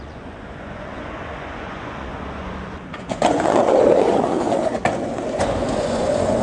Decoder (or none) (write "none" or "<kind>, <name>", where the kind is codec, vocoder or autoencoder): vocoder, Vocos